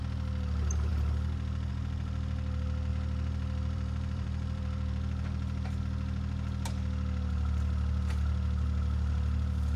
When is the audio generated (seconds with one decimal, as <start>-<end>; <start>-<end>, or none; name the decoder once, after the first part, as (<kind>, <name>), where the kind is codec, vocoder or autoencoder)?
2.9-5.8 (vocoder, BigVGAN v2)